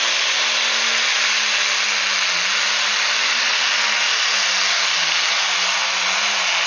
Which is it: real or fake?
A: real